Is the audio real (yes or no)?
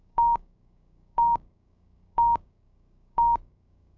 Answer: no